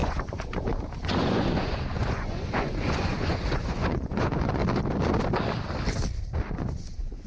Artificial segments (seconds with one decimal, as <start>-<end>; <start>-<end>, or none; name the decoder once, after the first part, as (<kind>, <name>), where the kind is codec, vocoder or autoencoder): 0.0-4.6 (vocoder, Vocos); 6.5-7.3